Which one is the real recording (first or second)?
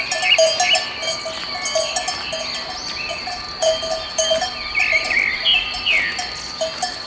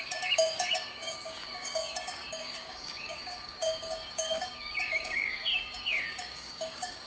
first